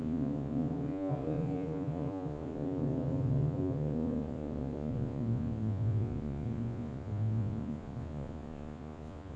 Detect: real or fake fake